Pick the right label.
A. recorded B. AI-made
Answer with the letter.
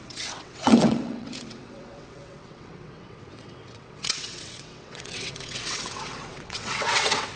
B